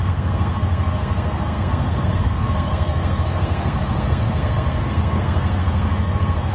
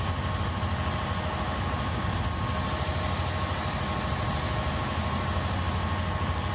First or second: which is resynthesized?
first